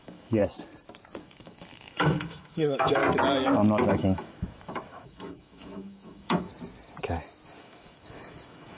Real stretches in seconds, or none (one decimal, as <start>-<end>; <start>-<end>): 0.4-1.2; 3.0-3.9; 6.5-7.6

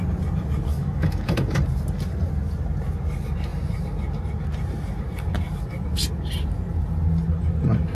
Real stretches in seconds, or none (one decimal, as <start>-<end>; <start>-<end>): 0.0-0.7; 1.6-7.9

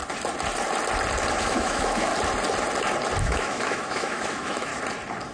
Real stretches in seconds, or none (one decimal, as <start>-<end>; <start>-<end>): 0.0-1.4; 2.1-3.2; 4.7-5.3

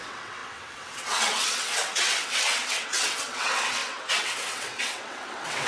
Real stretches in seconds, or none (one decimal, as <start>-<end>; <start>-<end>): none

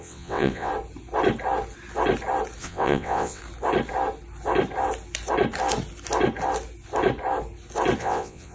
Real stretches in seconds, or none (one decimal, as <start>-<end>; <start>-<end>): 0.7-2.6; 3.4-8.0

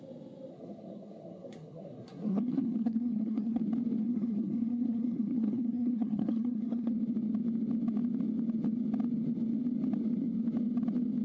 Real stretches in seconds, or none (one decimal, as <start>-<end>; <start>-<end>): 0.0-0.5; 3.6-4.0; 6.9-11.2

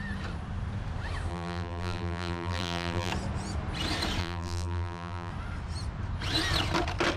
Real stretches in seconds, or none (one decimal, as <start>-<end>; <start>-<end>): 0.0-1.3; 3.1-4.2; 5.3-7.2

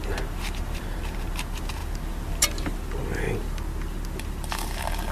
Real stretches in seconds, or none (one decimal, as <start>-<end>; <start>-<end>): 0.0-5.1